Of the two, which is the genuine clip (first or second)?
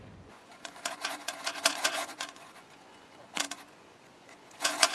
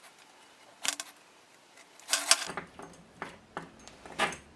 second